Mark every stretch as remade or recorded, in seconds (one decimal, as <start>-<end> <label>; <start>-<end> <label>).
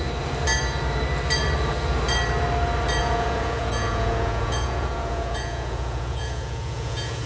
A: 0.0-3.0 recorded; 3.0-7.3 remade